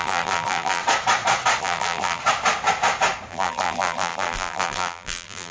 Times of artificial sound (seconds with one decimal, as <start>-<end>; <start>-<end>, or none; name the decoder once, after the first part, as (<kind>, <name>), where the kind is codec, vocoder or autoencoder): 0.0-0.8 (vocoder, BigVGAN v2); 1.6-2.2; 3.3-5.5